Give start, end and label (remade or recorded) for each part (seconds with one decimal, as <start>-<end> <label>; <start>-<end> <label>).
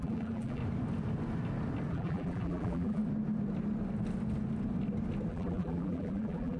0.0-0.6 remade; 0.6-1.9 recorded; 1.9-3.0 remade; 3.0-5.3 recorded; 5.3-6.6 remade